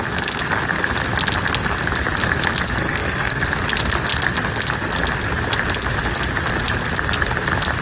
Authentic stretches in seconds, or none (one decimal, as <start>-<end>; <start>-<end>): 0.0-2.8; 3.4-7.8